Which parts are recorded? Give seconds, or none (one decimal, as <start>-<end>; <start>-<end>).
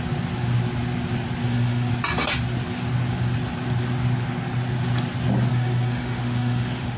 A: 0.0-1.4; 1.9-5.5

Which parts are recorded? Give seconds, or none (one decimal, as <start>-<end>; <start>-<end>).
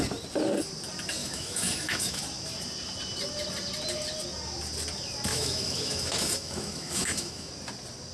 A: 0.0-1.2; 2.2-5.3; 7.5-8.1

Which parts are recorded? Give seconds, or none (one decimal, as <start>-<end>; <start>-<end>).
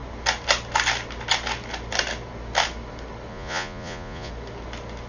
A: 0.0-3.3; 4.3-5.1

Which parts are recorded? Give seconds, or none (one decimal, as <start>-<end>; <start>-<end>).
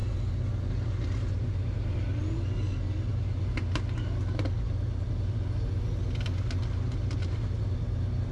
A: 0.0-8.3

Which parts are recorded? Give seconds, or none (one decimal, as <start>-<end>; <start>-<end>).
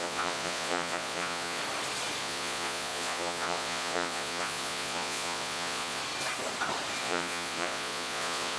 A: 1.6-2.2; 6.0-7.0